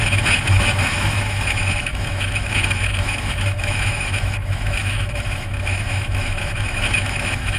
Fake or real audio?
fake